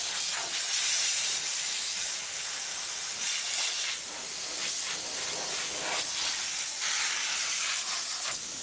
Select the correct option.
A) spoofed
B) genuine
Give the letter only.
A